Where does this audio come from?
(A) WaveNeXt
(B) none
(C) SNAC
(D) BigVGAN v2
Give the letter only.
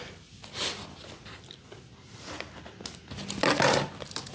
B